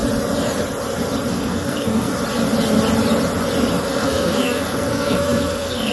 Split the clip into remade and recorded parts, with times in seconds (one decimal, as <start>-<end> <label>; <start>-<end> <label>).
0.0-1.3 recorded; 1.3-2.1 remade; 2.1-3.8 recorded; 3.8-5.9 remade